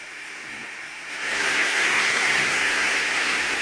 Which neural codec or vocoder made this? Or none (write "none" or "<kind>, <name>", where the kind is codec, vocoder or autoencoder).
codec, SNAC